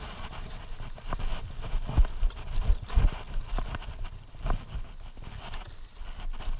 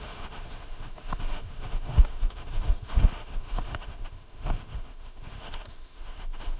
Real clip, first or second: first